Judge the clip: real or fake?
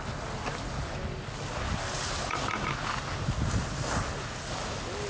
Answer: real